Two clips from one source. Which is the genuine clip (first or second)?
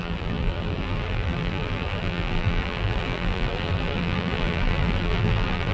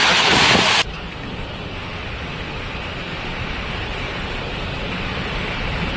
second